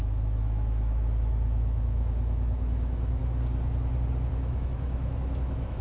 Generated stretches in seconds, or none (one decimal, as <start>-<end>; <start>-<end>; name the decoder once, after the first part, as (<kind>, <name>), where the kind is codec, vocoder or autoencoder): 0.0-3.2 (autoencoder, DAC-VAE); 4.3-5.8